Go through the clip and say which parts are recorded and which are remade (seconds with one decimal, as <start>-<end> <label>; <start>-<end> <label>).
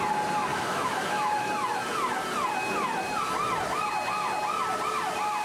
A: 0.0-0.5 recorded; 0.5-1.5 remade; 1.5-5.4 recorded